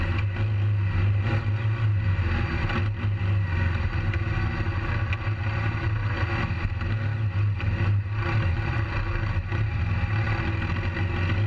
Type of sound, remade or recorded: recorded